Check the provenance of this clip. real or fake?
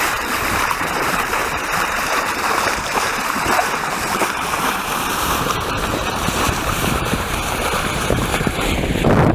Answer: fake